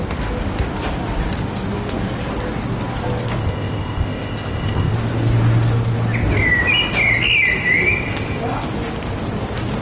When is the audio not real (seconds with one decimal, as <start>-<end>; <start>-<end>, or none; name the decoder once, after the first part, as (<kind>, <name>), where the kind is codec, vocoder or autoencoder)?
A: 3.4-4.9 (codec, ZipCodec)